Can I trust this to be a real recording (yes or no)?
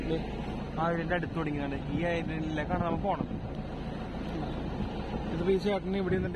yes